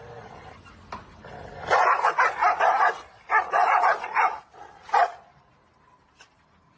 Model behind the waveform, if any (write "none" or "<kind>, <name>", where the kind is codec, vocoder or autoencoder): none